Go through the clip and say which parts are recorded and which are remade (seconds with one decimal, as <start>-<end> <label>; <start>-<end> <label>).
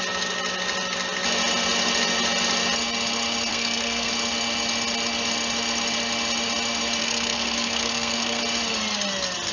0.0-3.5 recorded; 3.5-4.1 remade; 4.1-7.0 recorded; 7.0-8.4 remade; 8.4-9.5 recorded